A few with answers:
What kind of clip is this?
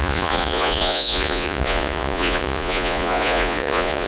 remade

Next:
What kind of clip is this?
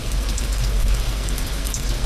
remade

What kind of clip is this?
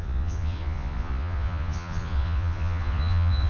remade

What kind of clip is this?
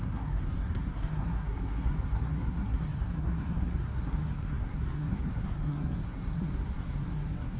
remade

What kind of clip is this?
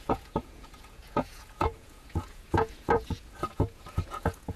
remade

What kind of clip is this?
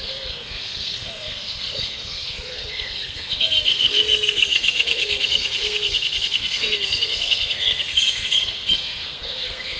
remade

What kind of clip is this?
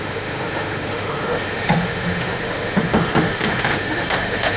remade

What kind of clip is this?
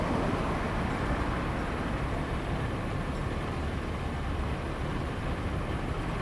recorded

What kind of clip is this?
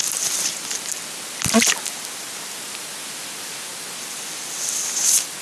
recorded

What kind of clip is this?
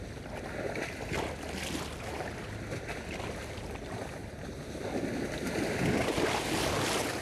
recorded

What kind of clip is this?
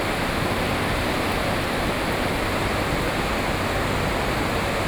recorded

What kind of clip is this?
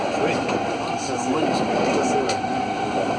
recorded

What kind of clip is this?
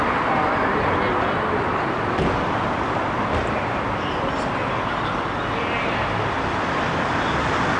recorded